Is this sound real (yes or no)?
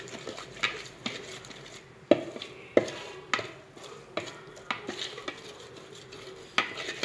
yes